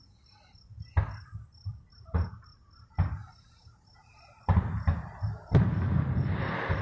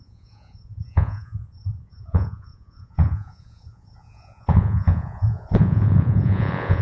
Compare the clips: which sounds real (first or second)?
first